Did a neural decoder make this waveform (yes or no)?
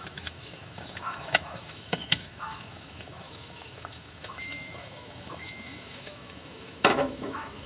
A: yes